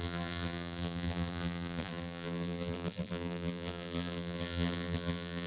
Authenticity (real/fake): fake